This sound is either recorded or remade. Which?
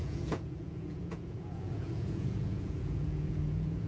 remade